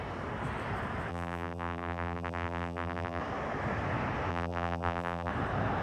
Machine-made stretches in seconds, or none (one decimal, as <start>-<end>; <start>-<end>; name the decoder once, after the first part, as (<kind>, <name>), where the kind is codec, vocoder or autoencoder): 1.1-3.2 (vocoder, BigVGAN v2); 4.3-5.3